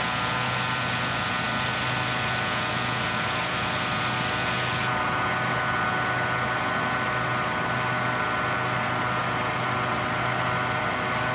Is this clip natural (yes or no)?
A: yes